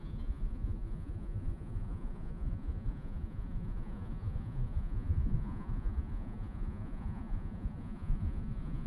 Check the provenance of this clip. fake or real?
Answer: fake